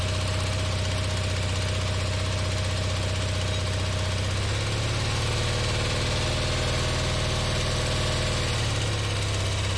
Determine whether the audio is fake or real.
real